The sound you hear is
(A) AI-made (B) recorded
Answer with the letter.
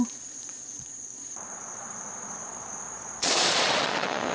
A